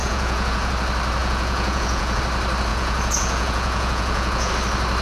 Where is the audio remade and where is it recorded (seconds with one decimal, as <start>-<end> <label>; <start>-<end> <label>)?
0.0-0.7 remade; 0.7-1.2 recorded; 1.2-2.2 remade; 2.2-2.7 recorded; 2.7-4.5 remade; 4.5-5.0 recorded